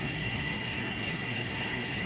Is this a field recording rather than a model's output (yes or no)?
no